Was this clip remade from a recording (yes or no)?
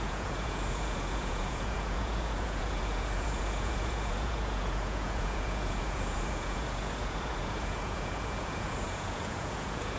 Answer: yes